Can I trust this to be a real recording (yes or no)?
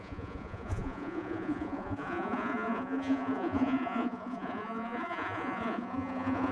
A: no